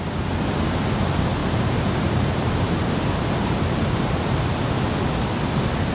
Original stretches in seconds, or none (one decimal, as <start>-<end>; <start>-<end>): 0.0-1.4; 4.9-5.9